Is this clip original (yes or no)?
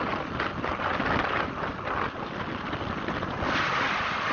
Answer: yes